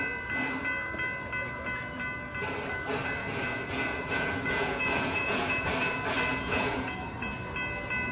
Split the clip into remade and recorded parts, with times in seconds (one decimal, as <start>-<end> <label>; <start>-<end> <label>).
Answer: 0.0-3.2 recorded; 3.2-5.7 remade; 5.7-6.3 recorded; 6.3-6.9 remade; 6.9-8.1 recorded